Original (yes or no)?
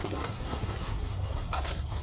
no